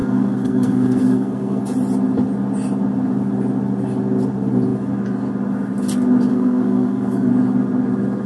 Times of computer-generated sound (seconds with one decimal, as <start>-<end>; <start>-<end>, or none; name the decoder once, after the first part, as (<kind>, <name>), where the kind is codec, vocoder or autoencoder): 0.0-1.6 (codec, SNAC); 6.3-7.3